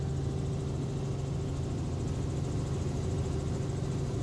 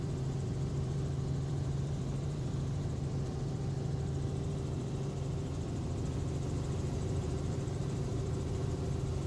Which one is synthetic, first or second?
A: second